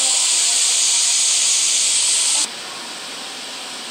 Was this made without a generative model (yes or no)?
yes